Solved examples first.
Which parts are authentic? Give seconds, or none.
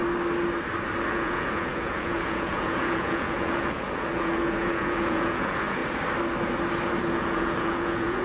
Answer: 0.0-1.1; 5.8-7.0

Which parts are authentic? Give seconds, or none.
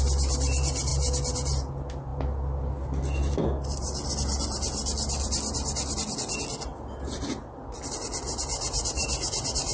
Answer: 0.0-9.7